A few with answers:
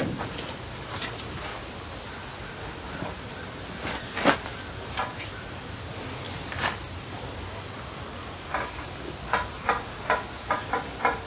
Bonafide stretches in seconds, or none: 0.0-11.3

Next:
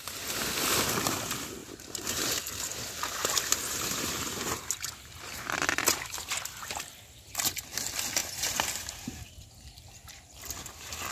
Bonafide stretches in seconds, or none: 0.0-1.6; 2.4-3.2; 5.8-8.2; 9.2-11.1

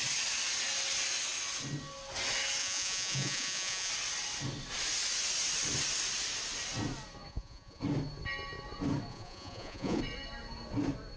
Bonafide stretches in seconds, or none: 0.0-2.6; 3.9-7.3; 7.8-9.1; 10.0-11.2